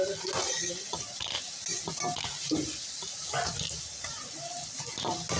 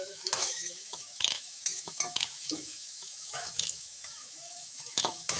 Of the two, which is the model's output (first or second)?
second